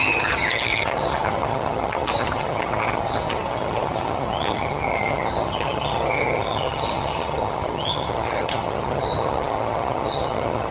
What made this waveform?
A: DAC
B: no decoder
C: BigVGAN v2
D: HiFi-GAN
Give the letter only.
D